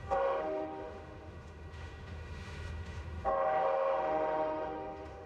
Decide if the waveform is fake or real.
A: fake